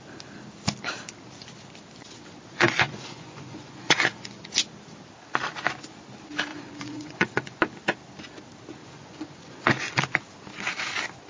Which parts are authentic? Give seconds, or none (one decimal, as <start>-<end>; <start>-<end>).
0.0-2.5; 4.4-6.5; 7.6-8.8; 10.0-11.3